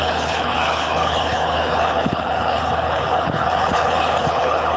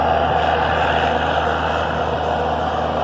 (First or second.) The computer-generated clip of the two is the first